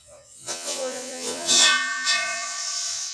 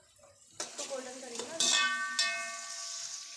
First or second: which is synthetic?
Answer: first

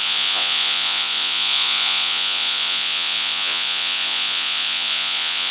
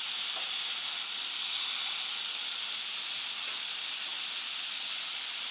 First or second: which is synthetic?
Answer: first